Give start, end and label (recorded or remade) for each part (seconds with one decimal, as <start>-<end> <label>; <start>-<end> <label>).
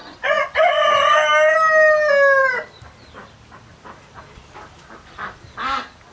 0.0-0.7 remade; 0.7-6.1 recorded